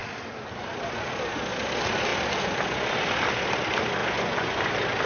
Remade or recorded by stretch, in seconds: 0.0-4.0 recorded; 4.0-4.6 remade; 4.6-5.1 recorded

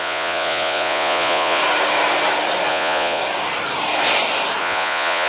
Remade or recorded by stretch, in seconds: 0.0-1.6 remade; 1.6-2.7 recorded; 2.7-3.2 remade; 3.2-4.6 recorded; 4.6-5.3 remade

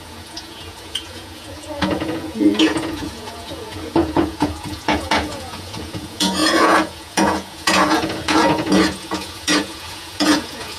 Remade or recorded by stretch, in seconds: 0.0-10.8 remade